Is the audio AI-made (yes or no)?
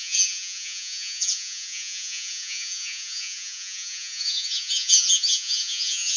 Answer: yes